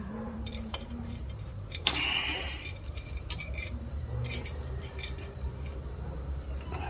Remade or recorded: remade